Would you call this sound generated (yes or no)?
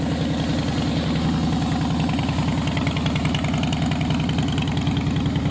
no